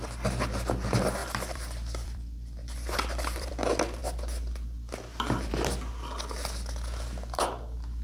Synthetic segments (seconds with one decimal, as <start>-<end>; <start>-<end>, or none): 1.2-3.5